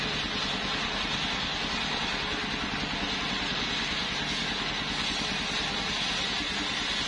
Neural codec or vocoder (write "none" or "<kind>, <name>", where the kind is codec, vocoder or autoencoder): none